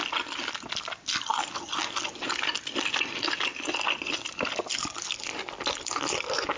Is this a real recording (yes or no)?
yes